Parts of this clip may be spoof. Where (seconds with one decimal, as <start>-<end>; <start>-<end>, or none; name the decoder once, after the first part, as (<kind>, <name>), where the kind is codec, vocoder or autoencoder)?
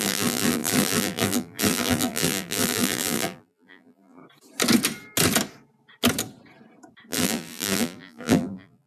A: 0.0-4.2 (vocoder, BigVGAN v2); 7.1-8.9